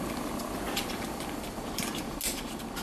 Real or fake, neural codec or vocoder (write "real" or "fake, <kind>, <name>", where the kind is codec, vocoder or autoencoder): real